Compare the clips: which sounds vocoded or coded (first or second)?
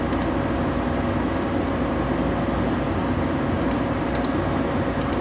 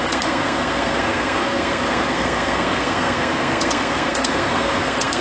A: second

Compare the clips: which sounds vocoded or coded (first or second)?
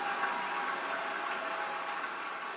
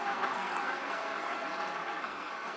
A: second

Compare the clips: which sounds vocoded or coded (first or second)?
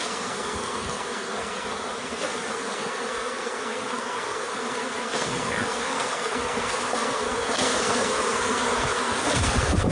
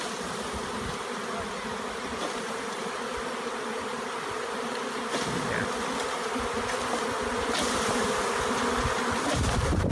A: first